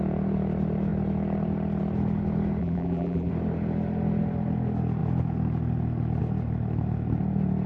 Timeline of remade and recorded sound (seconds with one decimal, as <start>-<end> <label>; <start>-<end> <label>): 0.0-2.6 recorded; 2.6-3.3 remade; 3.3-7.7 recorded